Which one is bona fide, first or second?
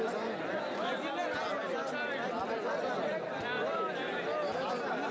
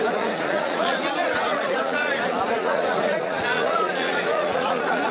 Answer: first